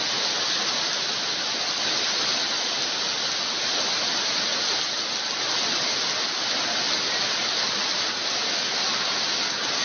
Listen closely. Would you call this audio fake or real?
real